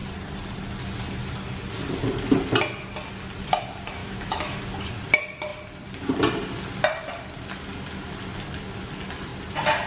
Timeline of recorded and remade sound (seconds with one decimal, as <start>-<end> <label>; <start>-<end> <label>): 0.0-4.0 recorded; 4.0-4.6 remade; 4.6-9.9 recorded